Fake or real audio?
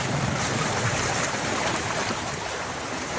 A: fake